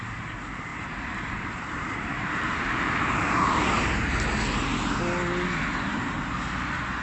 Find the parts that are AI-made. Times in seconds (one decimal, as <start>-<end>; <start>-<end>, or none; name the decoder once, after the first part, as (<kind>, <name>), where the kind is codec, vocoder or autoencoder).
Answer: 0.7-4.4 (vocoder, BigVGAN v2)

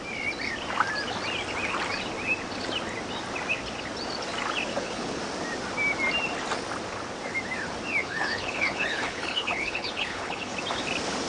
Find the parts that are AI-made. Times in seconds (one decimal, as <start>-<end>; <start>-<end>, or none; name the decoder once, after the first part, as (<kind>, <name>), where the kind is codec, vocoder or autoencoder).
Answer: 4.7-5.2 (codec, HILCodec); 8.0-10.5

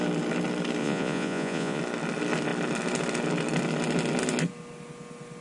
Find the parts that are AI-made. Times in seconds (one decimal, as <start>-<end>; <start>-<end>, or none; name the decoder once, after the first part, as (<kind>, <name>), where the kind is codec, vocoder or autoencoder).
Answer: 0.8-1.8 (vocoder, Vocos)

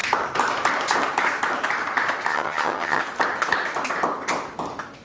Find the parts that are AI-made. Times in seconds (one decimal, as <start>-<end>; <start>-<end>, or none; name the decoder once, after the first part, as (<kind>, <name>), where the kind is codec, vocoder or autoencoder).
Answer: 2.3-3.0 (vocoder, HiFi-GAN)

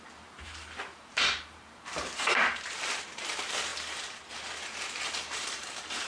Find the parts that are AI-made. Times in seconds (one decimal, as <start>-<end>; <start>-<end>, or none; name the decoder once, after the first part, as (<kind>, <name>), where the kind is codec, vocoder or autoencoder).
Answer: 0.0-6.1 (vocoder, BigVGAN v2)

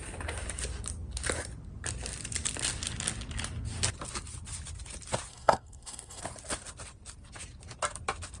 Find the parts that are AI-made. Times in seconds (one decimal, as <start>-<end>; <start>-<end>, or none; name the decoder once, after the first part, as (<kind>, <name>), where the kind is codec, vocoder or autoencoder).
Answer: 5.3-6.2 (codec, SNAC)

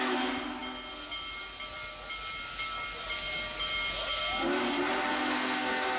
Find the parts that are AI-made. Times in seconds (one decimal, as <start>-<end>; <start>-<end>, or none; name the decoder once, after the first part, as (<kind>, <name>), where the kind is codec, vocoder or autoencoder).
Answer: 5.1-6.0 (codec, SNAC)